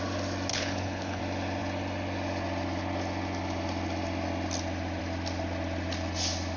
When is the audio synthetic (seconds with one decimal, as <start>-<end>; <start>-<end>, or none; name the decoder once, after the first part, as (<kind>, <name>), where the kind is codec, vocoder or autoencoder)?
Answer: 0.5-1.2 (codec, HILCodec)

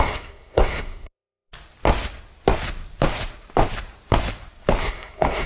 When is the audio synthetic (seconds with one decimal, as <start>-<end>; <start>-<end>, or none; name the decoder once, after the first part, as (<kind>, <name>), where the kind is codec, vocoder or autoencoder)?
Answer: 0.0-1.5 (codec, SNAC); 4.8-5.5

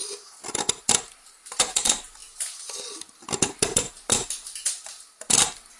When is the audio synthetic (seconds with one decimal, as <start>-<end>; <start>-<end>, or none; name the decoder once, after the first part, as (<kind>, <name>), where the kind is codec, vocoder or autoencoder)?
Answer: none

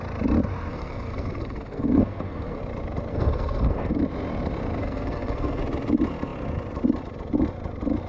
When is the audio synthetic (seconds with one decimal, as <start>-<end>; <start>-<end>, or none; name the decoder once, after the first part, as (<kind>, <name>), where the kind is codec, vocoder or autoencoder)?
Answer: 0.7-2.6 (codec, SNAC); 3.1-4.0; 4.8-5.6

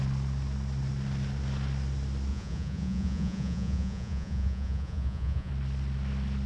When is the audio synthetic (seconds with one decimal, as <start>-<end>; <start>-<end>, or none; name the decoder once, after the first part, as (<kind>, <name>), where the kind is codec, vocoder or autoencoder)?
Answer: 2.3-5.5 (vocoder, Vocos)